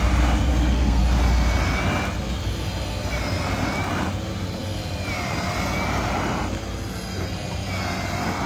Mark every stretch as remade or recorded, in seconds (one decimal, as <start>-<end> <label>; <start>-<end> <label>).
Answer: 0.0-0.5 recorded; 0.5-1.0 remade; 1.0-8.5 recorded